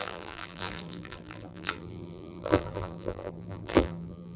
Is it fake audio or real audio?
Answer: fake